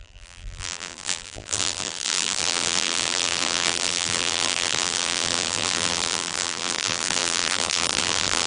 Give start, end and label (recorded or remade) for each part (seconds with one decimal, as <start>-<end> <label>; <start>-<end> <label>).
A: 0.0-8.5 remade